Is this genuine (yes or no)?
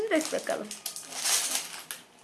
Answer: yes